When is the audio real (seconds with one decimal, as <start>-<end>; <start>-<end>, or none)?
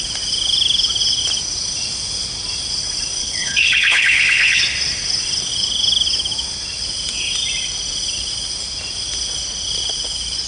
0.0-3.2; 4.6-10.5